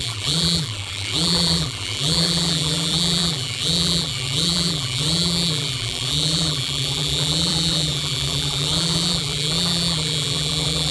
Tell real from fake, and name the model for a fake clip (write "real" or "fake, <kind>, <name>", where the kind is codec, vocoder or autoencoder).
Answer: fake, vocoder, BigVGAN v2